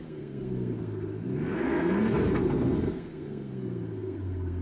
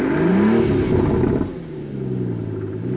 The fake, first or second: first